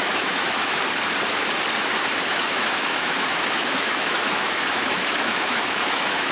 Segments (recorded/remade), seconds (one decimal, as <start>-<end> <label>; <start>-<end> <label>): 0.0-0.8 remade; 0.8-2.3 recorded; 2.3-6.3 remade

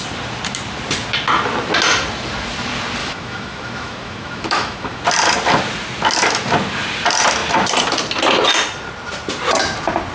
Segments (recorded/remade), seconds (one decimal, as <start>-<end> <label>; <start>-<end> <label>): 0.0-3.0 recorded; 3.0-5.0 remade; 5.0-10.1 recorded

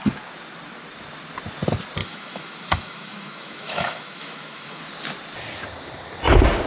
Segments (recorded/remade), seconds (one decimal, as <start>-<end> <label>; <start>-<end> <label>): 0.0-2.0 recorded; 2.0-4.8 remade; 4.8-6.7 recorded

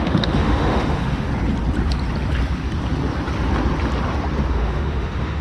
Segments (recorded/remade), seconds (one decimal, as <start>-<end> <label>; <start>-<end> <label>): 0.0-1.3 remade; 1.3-4.5 recorded; 4.5-5.4 remade

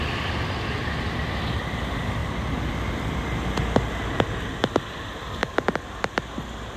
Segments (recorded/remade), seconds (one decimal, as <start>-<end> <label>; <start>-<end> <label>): 0.0-6.8 recorded

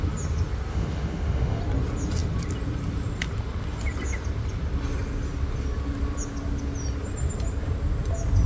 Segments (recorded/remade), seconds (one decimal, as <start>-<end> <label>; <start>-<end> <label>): 0.0-0.7 recorded; 0.7-1.6 remade; 1.6-8.5 recorded